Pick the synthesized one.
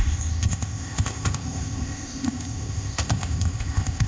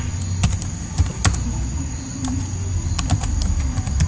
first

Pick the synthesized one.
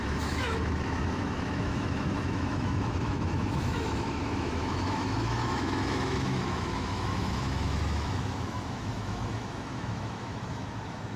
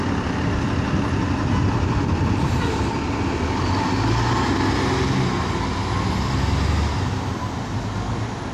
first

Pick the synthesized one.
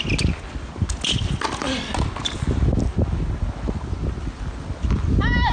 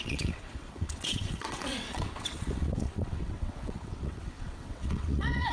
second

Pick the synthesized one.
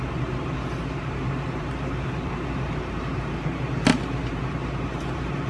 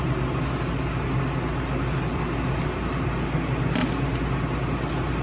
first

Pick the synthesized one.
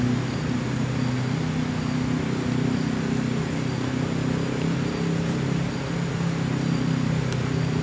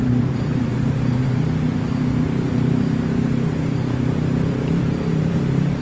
second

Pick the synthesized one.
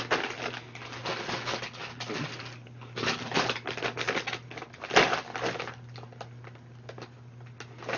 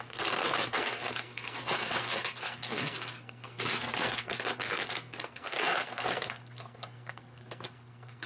second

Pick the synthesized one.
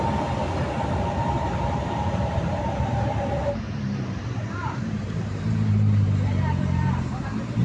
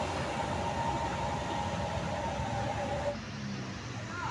first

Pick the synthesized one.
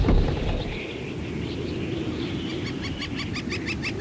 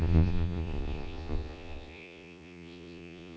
second